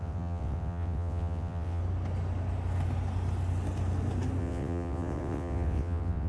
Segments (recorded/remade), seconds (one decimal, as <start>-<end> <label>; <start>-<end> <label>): 0.0-1.8 remade; 1.8-4.4 recorded; 4.4-6.3 remade